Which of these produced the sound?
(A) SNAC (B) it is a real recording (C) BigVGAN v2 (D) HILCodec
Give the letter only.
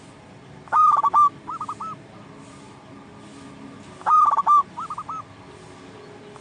B